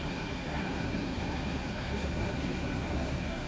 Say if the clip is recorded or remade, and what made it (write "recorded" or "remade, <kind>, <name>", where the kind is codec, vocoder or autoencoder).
remade, codec, SNAC